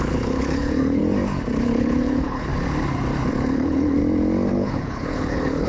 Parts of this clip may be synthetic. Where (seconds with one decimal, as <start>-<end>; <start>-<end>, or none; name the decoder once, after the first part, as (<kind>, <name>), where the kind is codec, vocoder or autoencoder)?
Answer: 0.0-1.0 (codec, HILCodec); 1.6-2.5; 3.3-4.0; 4.5-5.7